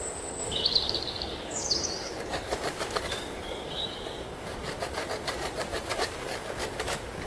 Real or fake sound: fake